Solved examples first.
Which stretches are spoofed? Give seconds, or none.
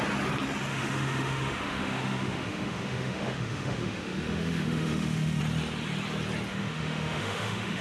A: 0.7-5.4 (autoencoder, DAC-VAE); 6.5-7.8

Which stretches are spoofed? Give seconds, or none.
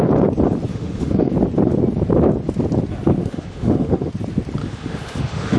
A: 0.7-1.3 (autoencoder, DAC-VAE); 3.2-4.1; 4.6-5.6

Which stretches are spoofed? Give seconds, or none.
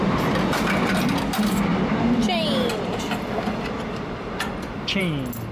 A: none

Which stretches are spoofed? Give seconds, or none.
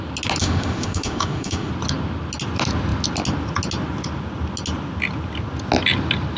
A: 0.4-1.7 (autoencoder, DAC-VAE)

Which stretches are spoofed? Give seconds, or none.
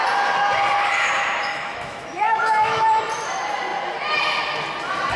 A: 1.4-3.0 (autoencoder, DAC-VAE)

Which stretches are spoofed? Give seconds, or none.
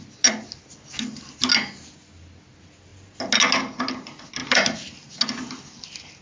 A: none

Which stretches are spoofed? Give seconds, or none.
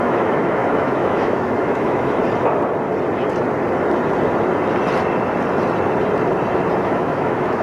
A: 0.0-2.2 (autoencoder, DAC-VAE); 6.8-7.6